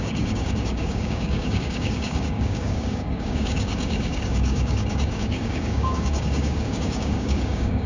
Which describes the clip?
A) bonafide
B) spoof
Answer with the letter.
B